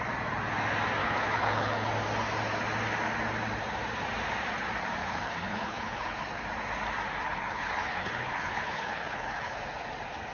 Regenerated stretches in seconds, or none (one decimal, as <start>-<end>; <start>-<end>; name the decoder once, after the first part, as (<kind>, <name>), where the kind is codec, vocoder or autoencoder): 1.0-1.9 (codec, HILCodec); 5.0-6.4; 7.3-9.6